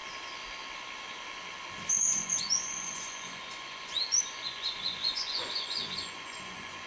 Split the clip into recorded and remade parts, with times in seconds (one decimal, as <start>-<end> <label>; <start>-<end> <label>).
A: 0.0-1.9 recorded; 1.9-6.9 remade